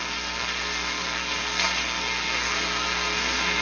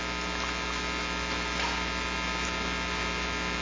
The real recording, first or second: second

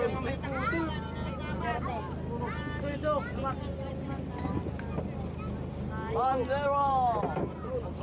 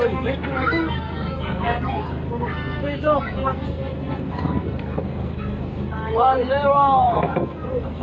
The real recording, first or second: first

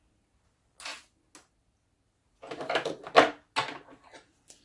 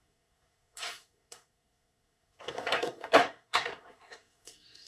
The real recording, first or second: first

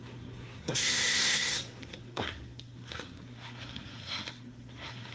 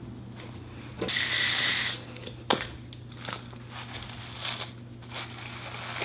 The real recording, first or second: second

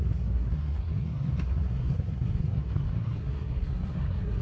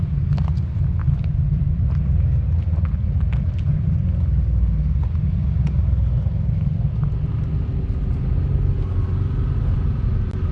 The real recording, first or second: second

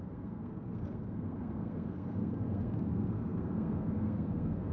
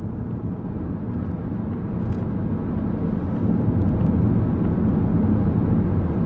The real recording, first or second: second